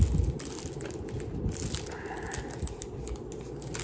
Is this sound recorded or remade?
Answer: recorded